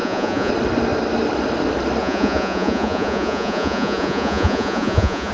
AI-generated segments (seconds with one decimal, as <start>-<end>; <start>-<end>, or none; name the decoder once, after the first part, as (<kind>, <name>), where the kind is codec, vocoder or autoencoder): 0.0-0.5 (vocoder, Vocos); 2.0-5.3

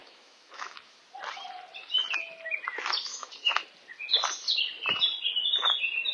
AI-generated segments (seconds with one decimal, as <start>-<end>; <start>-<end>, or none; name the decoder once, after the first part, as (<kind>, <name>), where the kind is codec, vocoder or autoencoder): 0.0-1.0 (autoencoder, DAC-VAE); 3.1-3.6